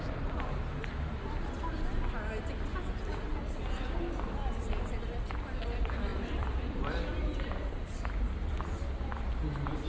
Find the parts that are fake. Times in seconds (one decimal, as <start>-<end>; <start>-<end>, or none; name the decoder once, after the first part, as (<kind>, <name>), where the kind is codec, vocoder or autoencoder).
6.1-8.8 (vocoder, BigVGAN v2)